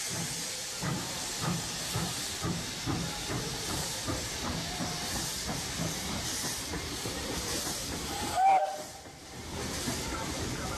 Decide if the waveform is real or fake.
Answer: fake